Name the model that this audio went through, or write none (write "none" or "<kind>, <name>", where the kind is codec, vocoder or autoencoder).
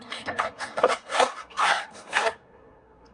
codec, SNAC